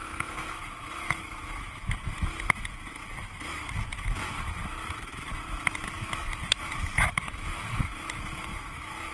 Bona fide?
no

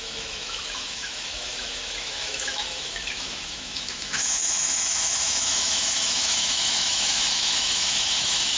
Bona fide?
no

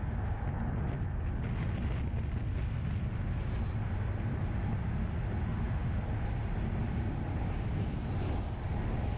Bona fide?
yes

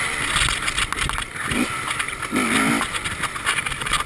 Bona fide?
yes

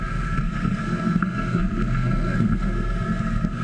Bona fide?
no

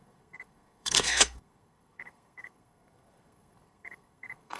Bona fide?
no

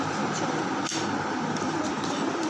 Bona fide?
no